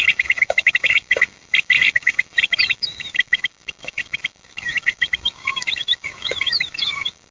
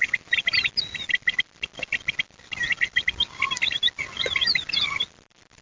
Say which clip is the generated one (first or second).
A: first